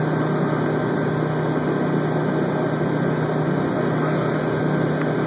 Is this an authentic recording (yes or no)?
yes